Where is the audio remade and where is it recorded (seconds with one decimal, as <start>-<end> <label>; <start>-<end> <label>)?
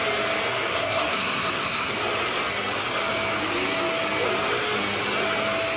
0.0-0.5 recorded; 0.5-1.9 remade; 1.9-5.8 recorded